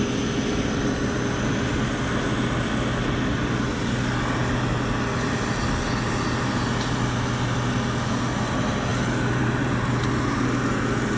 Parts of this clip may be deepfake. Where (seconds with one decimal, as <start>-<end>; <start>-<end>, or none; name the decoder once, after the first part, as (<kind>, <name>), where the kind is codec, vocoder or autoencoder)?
none